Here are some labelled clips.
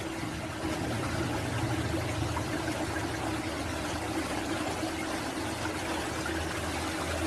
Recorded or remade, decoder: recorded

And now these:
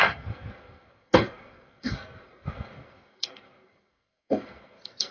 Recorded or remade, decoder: remade, codec, SNAC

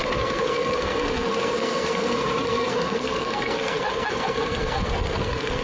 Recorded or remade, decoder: remade, codec, SNAC